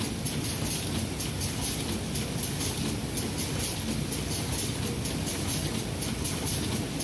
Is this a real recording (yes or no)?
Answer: yes